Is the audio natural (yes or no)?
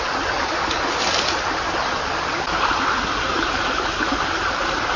yes